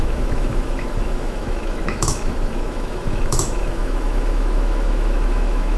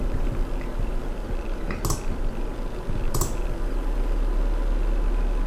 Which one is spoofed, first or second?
first